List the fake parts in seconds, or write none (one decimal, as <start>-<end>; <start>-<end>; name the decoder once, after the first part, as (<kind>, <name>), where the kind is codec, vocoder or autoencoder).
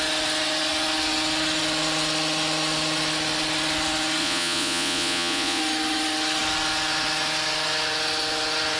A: 4.2-5.6 (vocoder, Vocos)